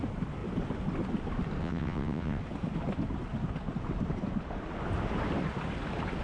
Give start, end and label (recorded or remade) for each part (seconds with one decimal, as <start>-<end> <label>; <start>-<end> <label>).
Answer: 0.0-1.6 recorded; 1.6-2.4 remade; 2.4-6.2 recorded